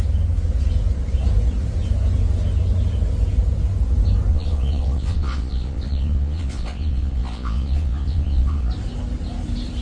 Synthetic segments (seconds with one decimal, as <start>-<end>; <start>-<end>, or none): 4.3-8.7